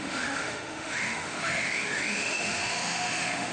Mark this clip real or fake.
fake